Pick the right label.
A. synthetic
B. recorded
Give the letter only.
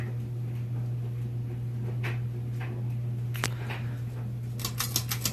B